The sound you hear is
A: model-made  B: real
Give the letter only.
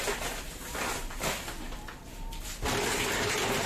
B